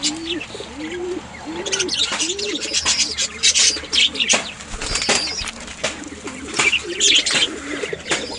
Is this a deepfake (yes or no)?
no